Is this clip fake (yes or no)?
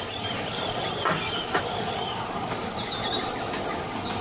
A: yes